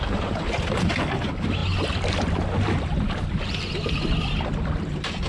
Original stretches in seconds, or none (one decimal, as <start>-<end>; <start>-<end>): 0.0-5.3